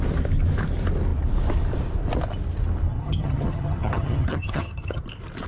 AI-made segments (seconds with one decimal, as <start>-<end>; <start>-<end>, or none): 2.9-5.0